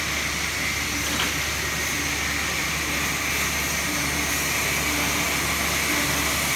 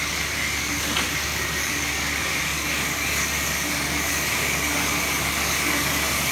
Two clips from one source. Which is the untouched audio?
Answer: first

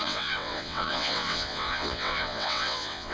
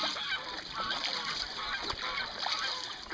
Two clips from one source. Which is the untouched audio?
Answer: second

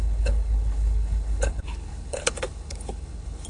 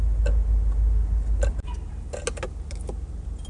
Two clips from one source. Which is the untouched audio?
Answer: second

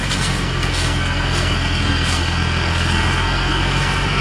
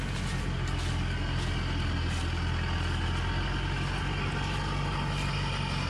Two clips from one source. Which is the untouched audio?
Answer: second